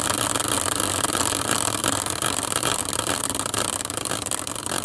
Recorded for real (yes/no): no